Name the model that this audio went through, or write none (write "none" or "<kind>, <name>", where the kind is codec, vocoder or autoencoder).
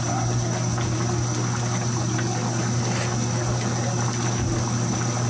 none